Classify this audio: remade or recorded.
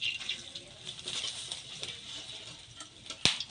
recorded